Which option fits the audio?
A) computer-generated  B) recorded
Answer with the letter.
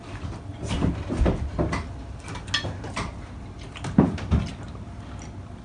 B